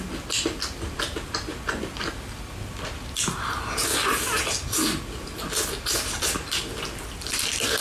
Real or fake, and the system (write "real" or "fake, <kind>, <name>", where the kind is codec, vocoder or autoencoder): real